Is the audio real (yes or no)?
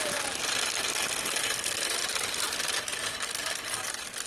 no